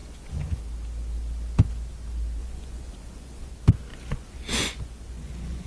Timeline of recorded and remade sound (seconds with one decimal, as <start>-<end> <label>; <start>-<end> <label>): 0.0-0.6 remade; 0.6-2.4 recorded; 2.4-3.5 remade; 3.5-3.9 recorded; 3.9-5.7 remade